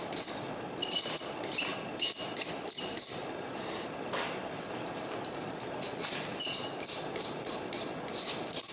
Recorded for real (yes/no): no